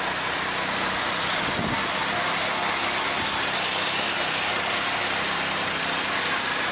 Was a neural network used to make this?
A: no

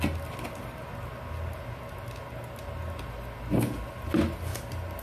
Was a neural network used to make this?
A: no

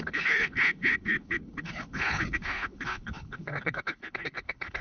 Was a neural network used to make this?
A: yes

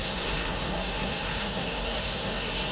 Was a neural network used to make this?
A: yes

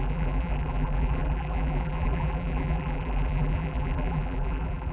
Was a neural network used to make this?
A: yes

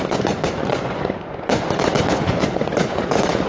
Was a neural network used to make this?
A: yes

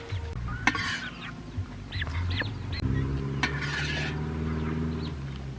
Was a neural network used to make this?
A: no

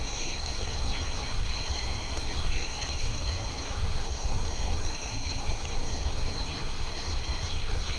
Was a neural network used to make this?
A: yes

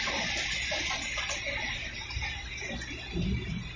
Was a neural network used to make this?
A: no